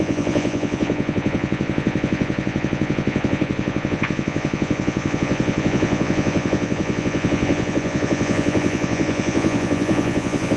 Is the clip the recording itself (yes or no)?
no